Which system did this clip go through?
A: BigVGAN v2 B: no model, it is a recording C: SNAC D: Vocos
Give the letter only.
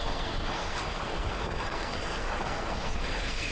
C